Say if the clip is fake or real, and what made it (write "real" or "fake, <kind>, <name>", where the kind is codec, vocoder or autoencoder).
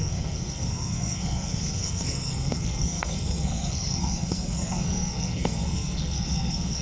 fake, codec, SNAC